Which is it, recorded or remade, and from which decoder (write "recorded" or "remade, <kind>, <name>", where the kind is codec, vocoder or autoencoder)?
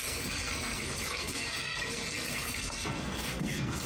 remade, codec, SNAC